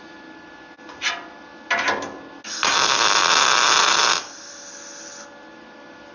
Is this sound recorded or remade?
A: recorded